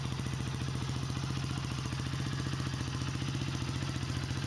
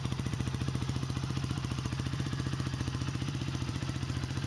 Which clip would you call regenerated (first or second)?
second